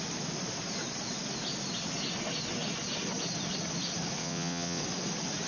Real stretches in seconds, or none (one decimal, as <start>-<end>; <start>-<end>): 0.0-4.2; 4.8-5.5